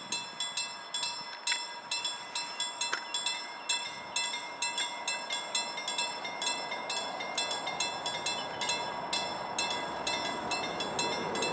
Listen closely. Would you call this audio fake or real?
real